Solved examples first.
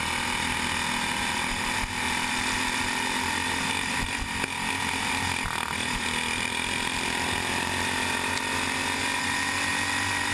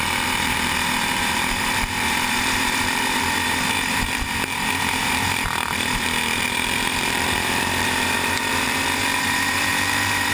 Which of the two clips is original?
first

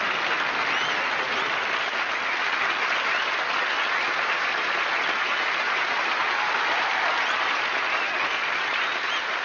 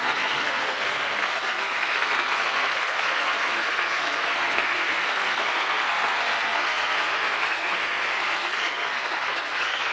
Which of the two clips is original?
first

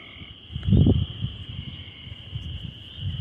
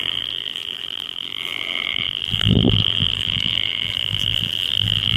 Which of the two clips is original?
first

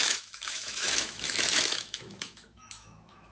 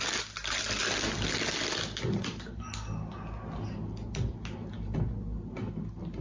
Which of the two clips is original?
second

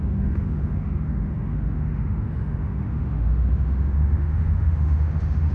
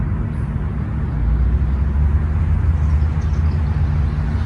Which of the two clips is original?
second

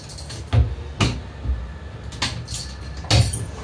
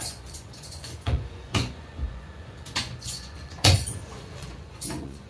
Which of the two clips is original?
first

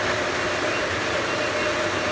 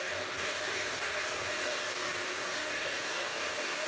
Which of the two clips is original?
first